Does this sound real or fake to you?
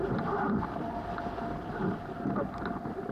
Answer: real